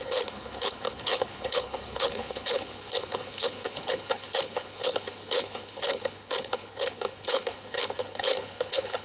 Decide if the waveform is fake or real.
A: fake